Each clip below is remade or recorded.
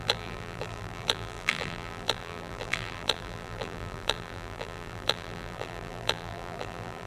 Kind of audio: remade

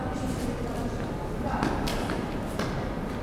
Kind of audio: recorded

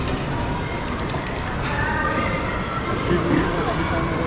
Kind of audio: remade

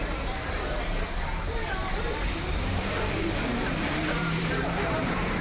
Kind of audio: remade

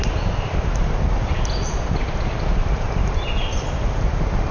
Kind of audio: recorded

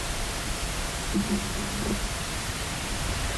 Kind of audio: recorded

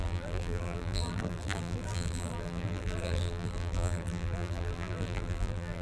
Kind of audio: remade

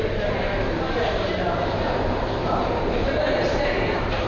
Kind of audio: remade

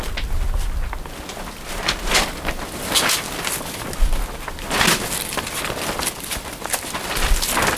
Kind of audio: recorded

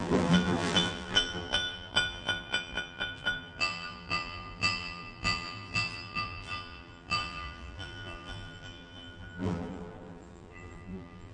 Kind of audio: remade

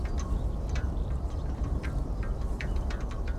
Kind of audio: remade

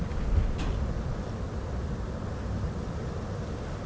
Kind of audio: recorded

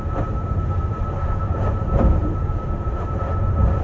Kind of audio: remade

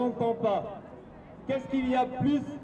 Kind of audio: recorded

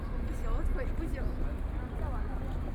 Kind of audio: recorded